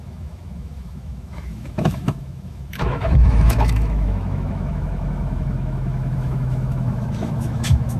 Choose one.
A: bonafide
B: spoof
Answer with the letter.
B